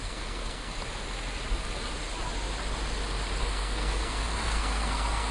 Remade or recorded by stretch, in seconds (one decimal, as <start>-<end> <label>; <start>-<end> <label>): 0.0-0.8 remade; 0.8-3.4 recorded; 3.4-5.3 remade